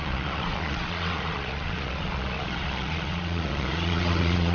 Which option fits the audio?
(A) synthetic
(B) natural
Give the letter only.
A